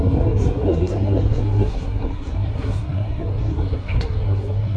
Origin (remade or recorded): remade